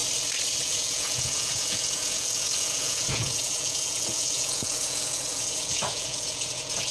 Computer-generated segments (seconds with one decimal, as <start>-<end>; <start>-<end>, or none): 0.6-6.9